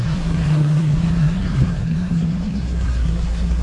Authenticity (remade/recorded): remade